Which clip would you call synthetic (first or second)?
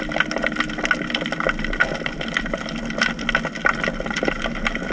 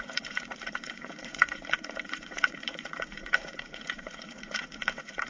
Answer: second